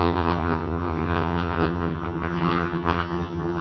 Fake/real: fake